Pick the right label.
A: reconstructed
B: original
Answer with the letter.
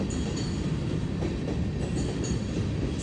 B